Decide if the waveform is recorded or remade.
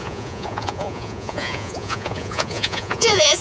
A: remade